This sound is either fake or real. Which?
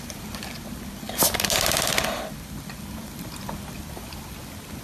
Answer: real